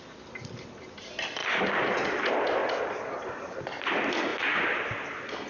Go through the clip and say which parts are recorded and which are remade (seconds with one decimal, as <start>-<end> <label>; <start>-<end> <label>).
0.0-1.4 recorded; 1.4-1.9 remade; 1.9-2.6 recorded; 2.6-3.4 remade; 3.4-5.5 recorded

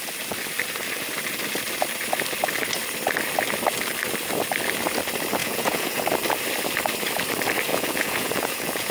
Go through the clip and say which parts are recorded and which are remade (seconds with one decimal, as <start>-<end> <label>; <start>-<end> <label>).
0.0-5.4 recorded; 5.4-6.0 remade; 6.0-7.7 recorded; 7.7-8.9 remade

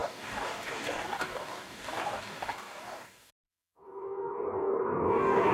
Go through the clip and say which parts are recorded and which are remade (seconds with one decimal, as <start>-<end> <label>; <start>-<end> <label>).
0.0-5.5 remade

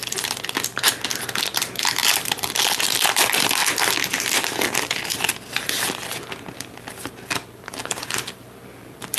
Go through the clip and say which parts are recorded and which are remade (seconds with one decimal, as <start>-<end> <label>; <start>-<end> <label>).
0.0-2.0 recorded; 2.0-2.5 remade; 2.5-9.2 recorded

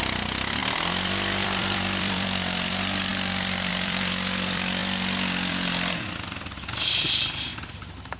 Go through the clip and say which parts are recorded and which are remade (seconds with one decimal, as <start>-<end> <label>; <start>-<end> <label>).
0.0-4.8 remade; 4.8-5.5 recorded; 5.5-7.5 remade; 7.5-8.2 recorded

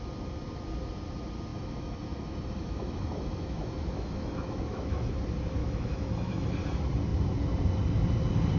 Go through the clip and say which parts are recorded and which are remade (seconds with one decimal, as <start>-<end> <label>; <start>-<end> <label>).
0.0-1.5 recorded; 1.5-5.1 remade; 5.1-5.6 recorded; 5.6-6.5 remade; 6.5-8.6 recorded